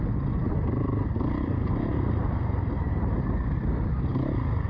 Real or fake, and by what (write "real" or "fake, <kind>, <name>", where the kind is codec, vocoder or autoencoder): real